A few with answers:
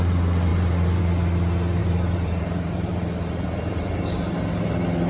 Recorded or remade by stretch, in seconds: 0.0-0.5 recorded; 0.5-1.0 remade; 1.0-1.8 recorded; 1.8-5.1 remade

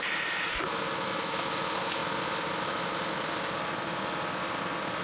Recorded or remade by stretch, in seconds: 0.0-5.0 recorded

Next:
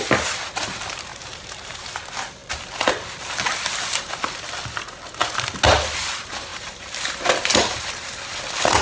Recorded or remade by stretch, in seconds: 0.0-1.1 recorded; 1.1-2.0 remade; 2.0-6.5 recorded; 6.5-7.2 remade; 7.2-8.8 recorded

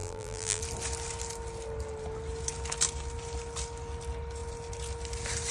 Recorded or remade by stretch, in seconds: 0.0-0.6 remade; 0.6-5.5 recorded

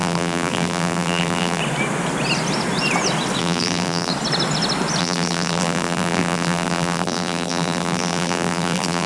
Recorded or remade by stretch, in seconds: 0.0-1.6 remade; 1.6-3.4 recorded; 3.4-4.1 remade; 4.1-5.0 recorded; 5.0-9.1 remade

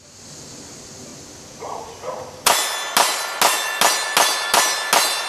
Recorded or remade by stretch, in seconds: 0.0-5.3 recorded

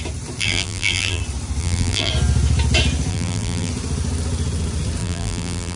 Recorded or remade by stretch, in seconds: 0.0-0.4 recorded; 0.4-1.2 remade; 1.2-1.6 recorded; 1.6-2.1 remade; 2.1-3.1 recorded; 3.1-3.7 remade; 3.7-5.0 recorded; 5.0-5.8 remade